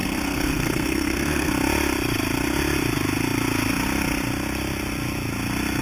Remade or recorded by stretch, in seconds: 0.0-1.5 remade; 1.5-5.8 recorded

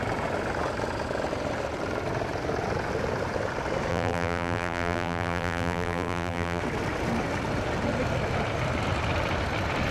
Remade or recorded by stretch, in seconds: 0.0-3.9 recorded; 3.9-6.6 remade; 6.6-9.9 recorded

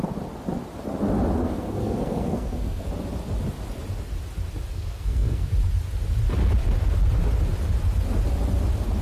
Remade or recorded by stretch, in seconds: 0.0-1.4 recorded; 1.4-2.9 remade; 2.9-4.7 recorded; 4.7-5.5 remade; 5.5-9.0 recorded

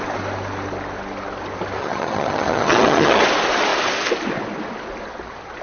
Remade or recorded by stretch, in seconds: 0.0-1.8 recorded; 1.8-3.2 remade; 3.2-5.6 recorded